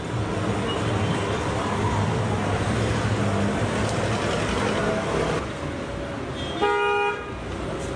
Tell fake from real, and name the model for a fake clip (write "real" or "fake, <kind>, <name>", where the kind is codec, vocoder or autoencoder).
real